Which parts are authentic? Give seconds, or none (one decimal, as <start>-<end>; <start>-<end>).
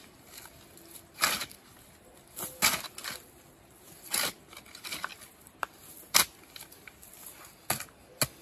0.0-8.4